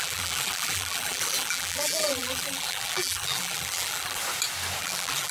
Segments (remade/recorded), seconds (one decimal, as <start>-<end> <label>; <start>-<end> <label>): 0.0-4.2 remade; 4.2-4.8 recorded; 4.8-5.3 remade